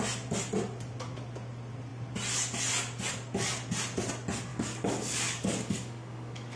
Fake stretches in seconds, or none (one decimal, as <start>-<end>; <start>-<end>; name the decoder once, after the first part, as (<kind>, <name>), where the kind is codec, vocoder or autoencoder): 4.5-6.6 (codec, DAC)